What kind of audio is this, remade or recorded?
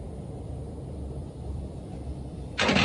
remade